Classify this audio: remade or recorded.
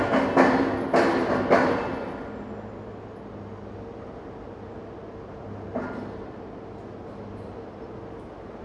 recorded